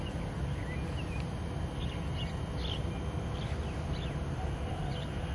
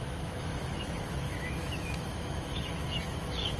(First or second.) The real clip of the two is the first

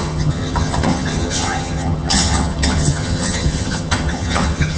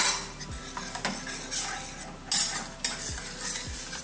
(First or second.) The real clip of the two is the second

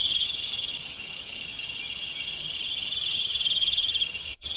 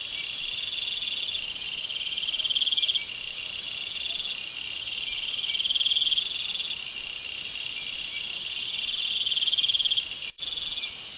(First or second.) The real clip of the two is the second